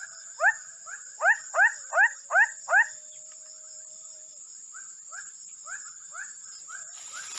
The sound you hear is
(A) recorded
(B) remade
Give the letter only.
A